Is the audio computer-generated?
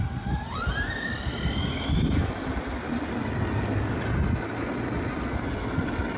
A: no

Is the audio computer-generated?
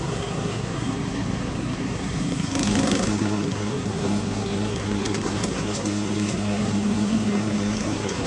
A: yes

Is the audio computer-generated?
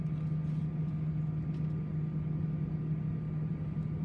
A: no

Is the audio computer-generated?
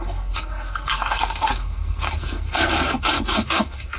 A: yes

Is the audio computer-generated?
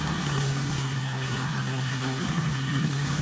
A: yes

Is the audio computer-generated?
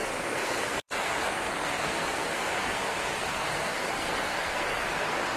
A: yes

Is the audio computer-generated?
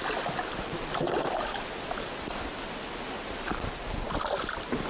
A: no